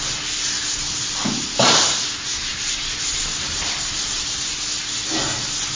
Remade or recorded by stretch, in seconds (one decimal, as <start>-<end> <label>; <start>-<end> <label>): 0.0-2.4 recorded; 2.4-4.5 remade; 4.5-5.8 recorded

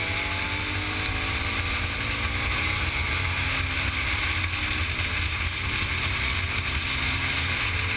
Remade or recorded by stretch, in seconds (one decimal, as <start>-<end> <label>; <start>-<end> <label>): 0.0-8.0 recorded

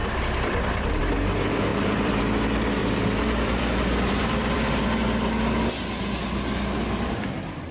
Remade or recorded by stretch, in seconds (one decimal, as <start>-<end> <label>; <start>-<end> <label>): 0.0-1.0 remade; 1.0-1.7 recorded; 1.7-2.2 remade; 2.2-2.8 recorded; 2.8-4.8 remade; 4.8-7.7 recorded

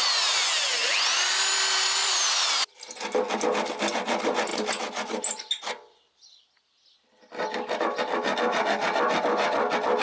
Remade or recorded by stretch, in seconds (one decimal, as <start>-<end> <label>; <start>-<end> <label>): 0.0-10.0 recorded

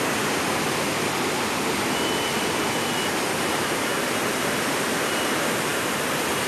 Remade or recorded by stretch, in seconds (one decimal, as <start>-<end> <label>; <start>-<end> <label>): 0.0-5.7 recorded; 5.7-6.5 remade

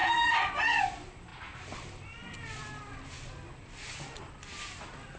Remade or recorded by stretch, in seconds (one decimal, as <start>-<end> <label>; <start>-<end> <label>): 0.0-0.8 remade; 0.8-1.3 recorded; 1.3-4.4 remade; 4.4-5.2 recorded

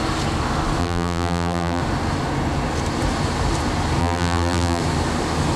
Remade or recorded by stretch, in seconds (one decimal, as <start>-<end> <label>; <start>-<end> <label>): 0.0-0.8 recorded; 0.8-1.8 remade; 1.8-4.0 recorded; 4.0-4.8 remade; 4.8-5.6 recorded